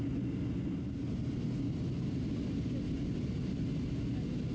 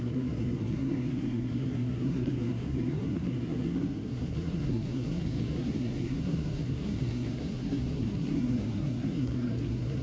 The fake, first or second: second